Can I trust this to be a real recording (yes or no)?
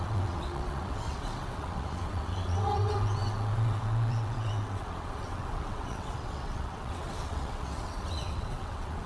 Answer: no